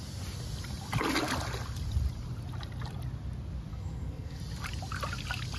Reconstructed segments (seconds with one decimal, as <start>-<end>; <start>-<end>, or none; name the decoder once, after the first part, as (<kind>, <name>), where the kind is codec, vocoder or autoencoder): 3.7-4.4 (codec, SNAC)